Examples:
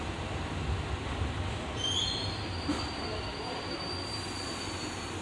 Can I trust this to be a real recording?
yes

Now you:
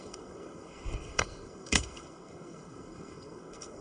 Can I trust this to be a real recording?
no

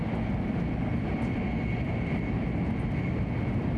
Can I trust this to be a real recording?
yes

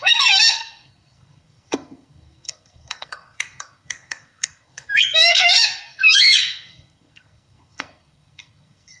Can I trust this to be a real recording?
no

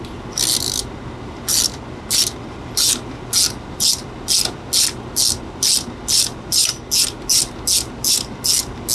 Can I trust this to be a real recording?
yes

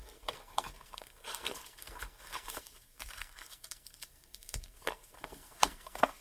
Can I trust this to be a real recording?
no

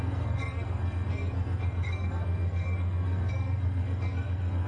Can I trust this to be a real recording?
no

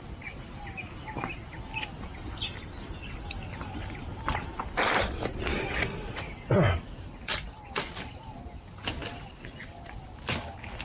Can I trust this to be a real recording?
yes